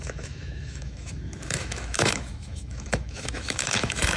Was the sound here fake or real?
fake